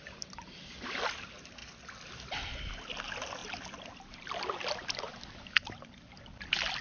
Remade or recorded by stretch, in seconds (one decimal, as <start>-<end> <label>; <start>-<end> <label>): 0.0-6.8 recorded